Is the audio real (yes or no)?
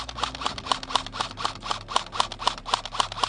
yes